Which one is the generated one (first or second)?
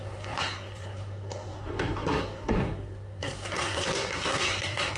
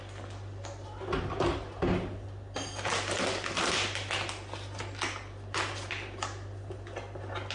first